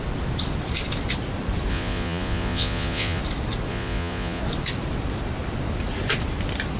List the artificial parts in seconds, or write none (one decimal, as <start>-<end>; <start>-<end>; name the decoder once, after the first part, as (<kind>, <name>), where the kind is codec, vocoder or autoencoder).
1.7-3.2 (vocoder, Vocos); 3.7-4.4